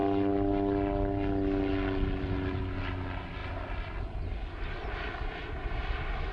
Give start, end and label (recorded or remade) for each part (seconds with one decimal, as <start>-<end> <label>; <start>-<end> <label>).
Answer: 0.0-6.3 recorded